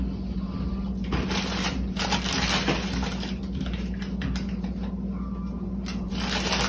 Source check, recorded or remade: recorded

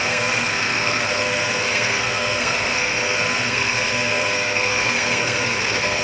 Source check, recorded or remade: remade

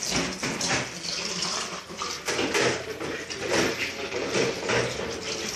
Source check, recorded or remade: recorded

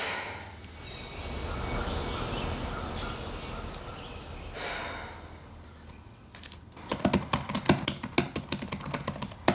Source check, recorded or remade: recorded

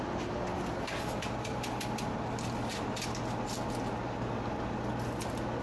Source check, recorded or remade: recorded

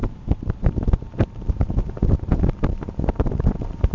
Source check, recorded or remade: remade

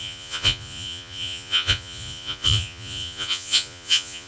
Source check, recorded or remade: remade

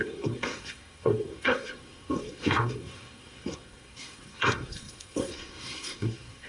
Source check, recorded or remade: remade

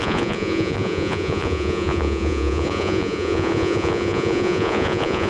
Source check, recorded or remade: remade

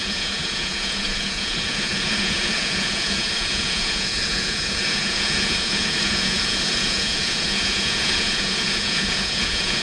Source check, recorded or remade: remade